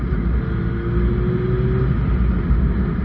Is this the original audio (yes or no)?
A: yes